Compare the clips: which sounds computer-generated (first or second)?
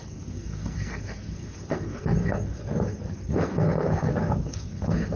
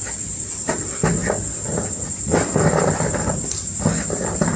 first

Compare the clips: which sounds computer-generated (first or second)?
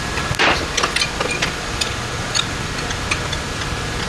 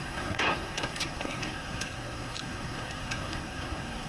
second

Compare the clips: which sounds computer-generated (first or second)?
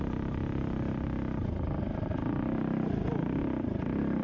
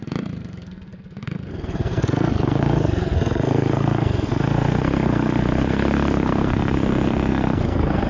second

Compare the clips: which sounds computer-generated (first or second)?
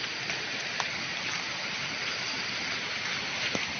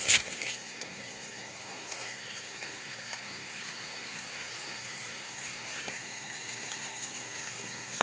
second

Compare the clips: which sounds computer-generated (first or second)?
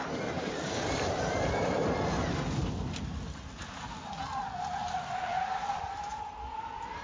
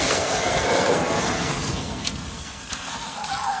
second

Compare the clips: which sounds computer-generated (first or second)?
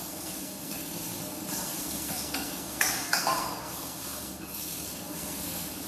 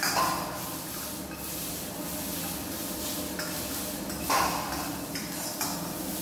first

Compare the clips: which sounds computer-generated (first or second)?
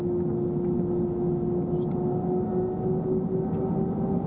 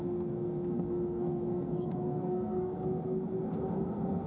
second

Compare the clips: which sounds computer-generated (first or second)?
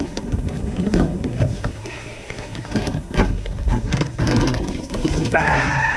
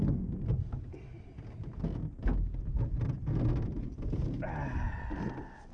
first